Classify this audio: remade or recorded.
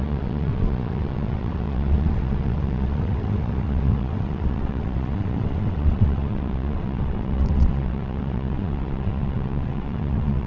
remade